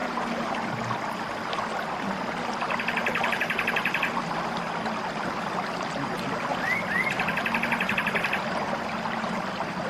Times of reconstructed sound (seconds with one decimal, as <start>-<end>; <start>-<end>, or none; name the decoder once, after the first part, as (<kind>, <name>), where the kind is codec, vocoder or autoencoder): 0.0-0.6 (vocoder, BigVGAN v2); 3.0-4.0